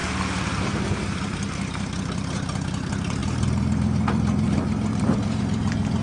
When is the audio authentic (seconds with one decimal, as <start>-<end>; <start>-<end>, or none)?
0.0-0.6